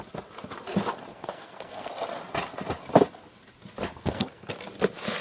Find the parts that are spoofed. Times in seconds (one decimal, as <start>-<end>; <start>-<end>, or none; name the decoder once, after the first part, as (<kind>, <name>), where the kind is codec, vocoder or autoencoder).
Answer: 1.1-1.9 (codec, SNAC); 3.9-4.5

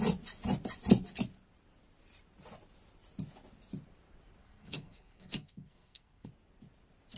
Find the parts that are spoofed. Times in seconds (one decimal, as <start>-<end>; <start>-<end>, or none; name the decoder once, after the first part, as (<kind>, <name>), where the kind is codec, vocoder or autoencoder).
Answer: 4.4-6.3 (codec, SNAC)